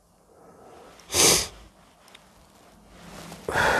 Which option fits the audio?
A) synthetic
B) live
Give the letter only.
B